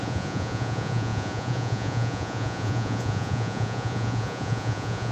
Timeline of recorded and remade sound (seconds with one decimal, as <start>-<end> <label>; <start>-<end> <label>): 0.0-5.1 remade